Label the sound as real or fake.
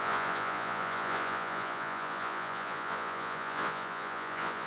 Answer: fake